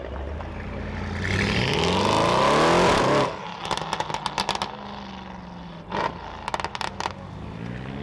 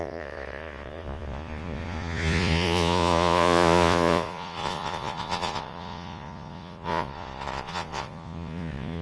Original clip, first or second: first